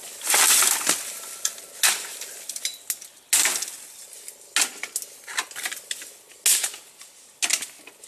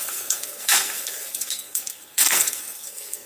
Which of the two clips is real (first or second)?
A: first